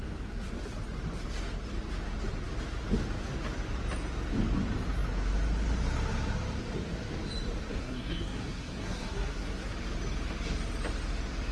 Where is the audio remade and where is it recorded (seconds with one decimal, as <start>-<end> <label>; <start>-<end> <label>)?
0.0-7.8 recorded; 7.8-9.7 remade; 9.7-11.5 recorded